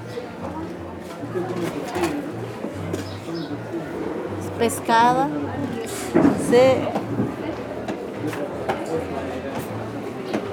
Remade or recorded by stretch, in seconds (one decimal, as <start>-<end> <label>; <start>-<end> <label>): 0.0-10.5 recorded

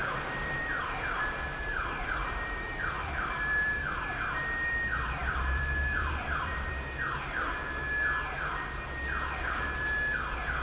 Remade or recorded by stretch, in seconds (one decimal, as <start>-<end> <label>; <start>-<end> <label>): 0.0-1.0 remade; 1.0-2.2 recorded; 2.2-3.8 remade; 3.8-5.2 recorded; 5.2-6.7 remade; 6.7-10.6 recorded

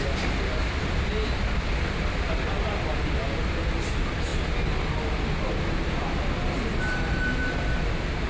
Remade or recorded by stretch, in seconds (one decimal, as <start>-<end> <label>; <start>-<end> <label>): 0.0-8.3 recorded

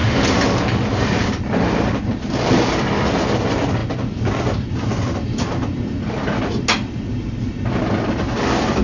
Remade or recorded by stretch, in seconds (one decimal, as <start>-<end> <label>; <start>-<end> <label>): 0.0-8.8 recorded

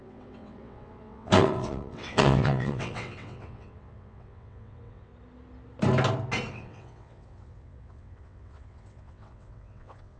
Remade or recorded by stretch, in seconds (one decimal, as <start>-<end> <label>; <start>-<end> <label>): 0.0-5.1 remade; 5.1-6.5 recorded; 6.5-10.2 remade